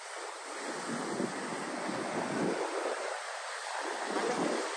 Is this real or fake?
real